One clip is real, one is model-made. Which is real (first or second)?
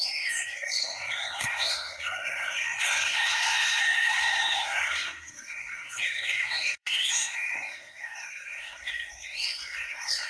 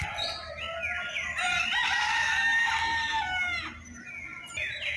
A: second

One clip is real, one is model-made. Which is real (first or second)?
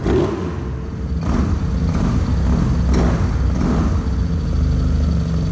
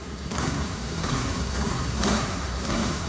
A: first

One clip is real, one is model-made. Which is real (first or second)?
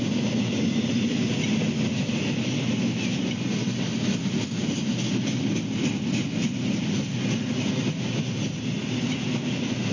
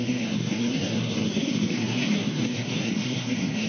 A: first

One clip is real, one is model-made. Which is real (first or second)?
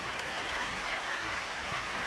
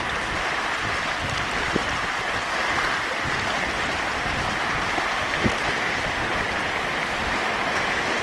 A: second